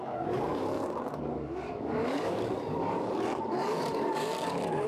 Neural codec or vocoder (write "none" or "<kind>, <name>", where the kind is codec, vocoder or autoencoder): codec, DAC